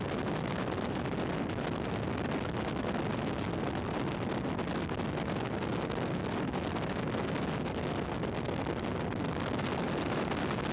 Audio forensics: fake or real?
real